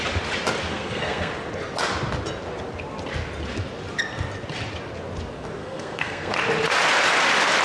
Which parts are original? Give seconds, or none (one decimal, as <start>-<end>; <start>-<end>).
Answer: 0.0-0.7; 1.3-5.6; 6.3-7.6